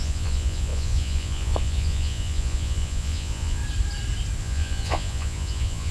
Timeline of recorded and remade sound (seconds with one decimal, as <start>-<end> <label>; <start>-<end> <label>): 0.0-3.6 remade; 3.6-4.4 recorded; 4.4-5.9 remade